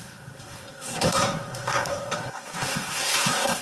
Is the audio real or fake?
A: fake